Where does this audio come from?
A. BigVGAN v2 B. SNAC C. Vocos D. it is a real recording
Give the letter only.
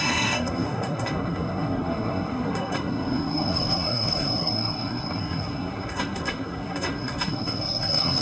B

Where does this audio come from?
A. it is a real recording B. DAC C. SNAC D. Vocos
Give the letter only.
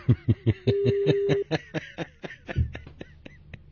A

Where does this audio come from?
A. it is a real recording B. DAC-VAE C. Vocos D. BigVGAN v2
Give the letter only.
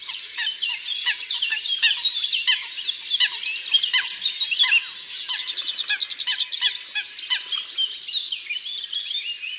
A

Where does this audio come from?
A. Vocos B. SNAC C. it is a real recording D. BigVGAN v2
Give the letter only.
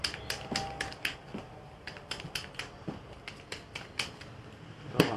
C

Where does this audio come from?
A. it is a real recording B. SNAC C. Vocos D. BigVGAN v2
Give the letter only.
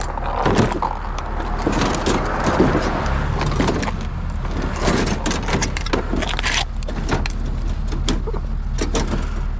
A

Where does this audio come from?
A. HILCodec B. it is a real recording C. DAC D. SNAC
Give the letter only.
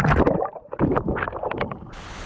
B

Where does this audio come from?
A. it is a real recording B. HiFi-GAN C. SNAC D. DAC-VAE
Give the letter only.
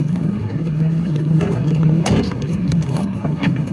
C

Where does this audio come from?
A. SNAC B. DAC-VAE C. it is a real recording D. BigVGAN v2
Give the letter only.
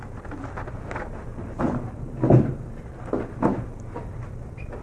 C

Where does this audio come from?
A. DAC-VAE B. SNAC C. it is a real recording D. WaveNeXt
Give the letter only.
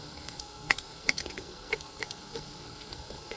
B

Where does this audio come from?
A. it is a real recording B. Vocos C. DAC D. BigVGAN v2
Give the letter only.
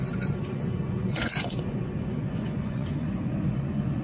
B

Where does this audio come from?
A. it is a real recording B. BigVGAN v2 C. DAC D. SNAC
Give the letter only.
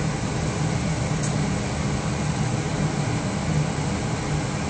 A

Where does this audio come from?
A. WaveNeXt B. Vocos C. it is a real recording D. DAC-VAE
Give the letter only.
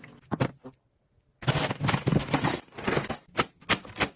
C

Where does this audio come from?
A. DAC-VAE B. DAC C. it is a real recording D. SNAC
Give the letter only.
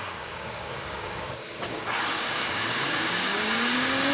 B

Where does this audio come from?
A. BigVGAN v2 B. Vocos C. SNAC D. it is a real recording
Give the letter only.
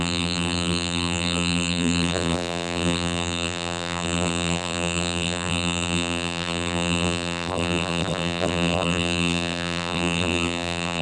A